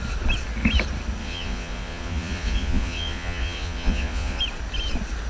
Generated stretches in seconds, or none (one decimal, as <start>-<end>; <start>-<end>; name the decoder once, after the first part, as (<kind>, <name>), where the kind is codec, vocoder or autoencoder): 1.2-4.4 (vocoder, Vocos)